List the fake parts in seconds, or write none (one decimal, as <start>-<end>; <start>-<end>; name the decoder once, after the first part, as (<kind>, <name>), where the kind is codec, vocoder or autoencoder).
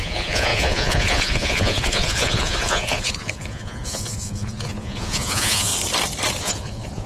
0.0-5.7 (vocoder, Vocos); 6.4-7.1